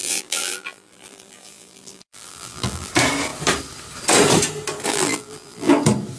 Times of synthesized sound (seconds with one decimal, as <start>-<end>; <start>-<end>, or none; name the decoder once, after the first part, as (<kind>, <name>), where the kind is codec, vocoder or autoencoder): 0.0-2.9 (vocoder, BigVGAN v2); 4.9-5.7